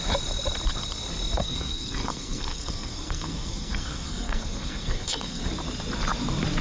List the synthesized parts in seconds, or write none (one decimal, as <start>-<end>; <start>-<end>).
1.4-5.4